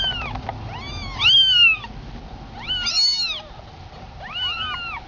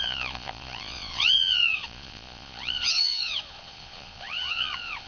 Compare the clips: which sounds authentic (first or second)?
first